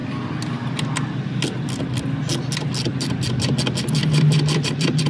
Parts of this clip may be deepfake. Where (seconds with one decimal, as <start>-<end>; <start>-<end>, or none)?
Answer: 2.9-3.5; 4.0-5.1